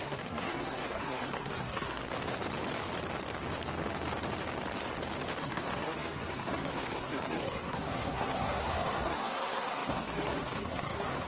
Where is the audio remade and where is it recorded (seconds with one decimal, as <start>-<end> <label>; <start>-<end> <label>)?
0.0-2.0 remade; 2.0-5.4 recorded; 5.4-11.3 remade